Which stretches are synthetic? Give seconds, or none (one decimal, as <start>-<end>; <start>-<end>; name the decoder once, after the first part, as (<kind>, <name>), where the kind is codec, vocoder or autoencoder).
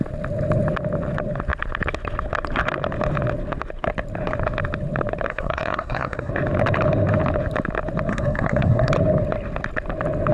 5.3-6.3 (codec, SNAC); 8.1-8.9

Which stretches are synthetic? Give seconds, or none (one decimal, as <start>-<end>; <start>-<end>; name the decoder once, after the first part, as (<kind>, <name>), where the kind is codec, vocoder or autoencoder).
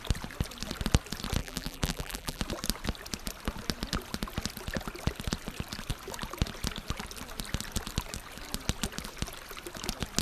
1.4-2.4 (vocoder, BigVGAN v2)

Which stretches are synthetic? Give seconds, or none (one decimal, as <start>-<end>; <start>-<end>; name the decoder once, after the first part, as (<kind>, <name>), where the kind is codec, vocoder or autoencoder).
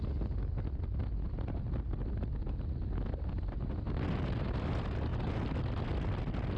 none